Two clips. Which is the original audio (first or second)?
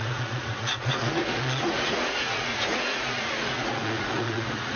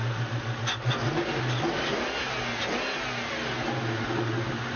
second